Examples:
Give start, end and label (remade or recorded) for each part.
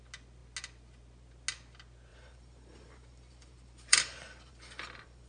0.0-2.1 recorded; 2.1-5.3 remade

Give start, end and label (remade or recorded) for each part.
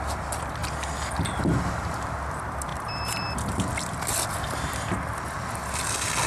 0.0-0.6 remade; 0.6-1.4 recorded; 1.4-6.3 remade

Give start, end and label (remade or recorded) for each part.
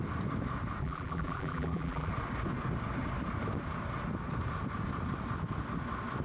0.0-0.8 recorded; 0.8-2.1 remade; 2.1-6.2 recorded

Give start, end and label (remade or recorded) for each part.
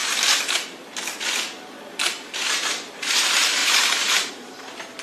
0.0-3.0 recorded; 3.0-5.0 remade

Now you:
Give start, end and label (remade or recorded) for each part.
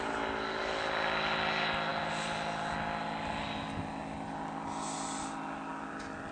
0.0-6.3 recorded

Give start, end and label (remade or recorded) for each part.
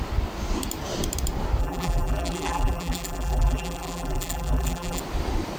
0.0-1.6 recorded; 1.6-5.0 remade; 5.0-5.6 recorded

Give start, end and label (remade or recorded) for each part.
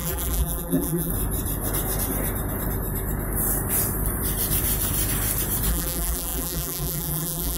0.0-1.1 remade; 1.1-5.7 recorded; 5.7-7.6 remade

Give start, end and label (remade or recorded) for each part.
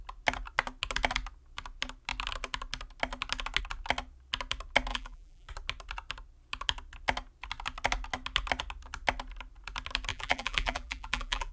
0.0-4.9 recorded; 4.9-5.5 remade; 5.5-10.1 recorded; 10.1-11.5 remade